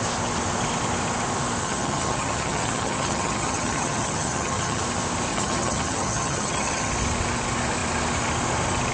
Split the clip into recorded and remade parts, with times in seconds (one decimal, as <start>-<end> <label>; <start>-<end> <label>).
0.0-1.6 recorded; 1.6-4.8 remade; 4.8-5.3 recorded; 5.3-6.9 remade; 6.9-8.9 recorded